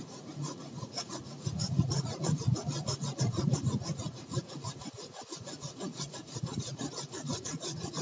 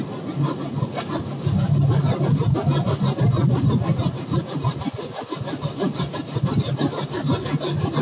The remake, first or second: first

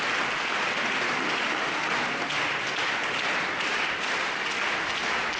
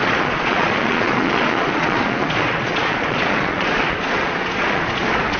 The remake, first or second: second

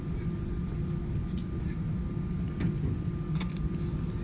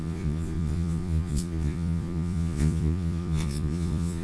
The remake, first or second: second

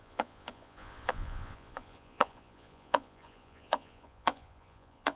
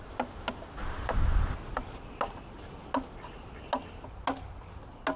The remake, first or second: first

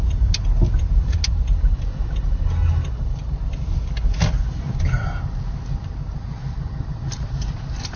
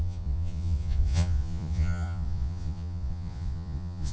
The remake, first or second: second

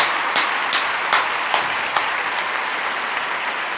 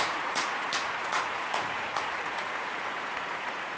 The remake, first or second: second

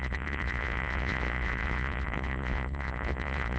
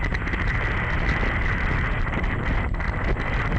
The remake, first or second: first